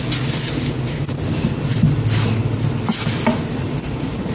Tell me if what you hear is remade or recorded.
recorded